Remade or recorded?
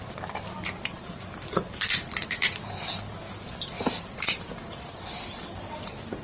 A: remade